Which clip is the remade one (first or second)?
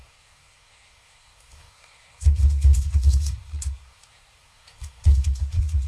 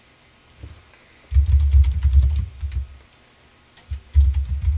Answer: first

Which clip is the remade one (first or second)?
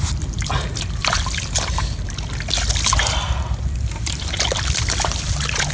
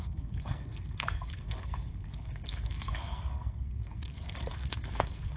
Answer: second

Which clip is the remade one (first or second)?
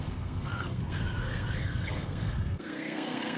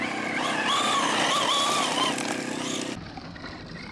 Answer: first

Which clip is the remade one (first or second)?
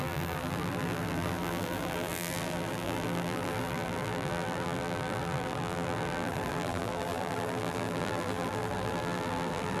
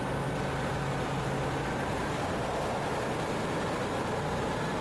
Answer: first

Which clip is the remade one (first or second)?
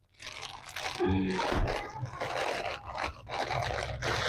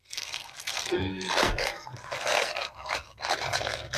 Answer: second